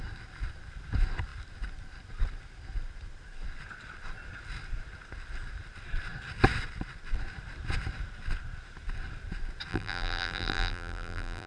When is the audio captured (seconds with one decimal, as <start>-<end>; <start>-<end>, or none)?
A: 0.0-9.7